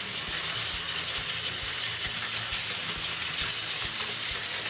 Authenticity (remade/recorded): recorded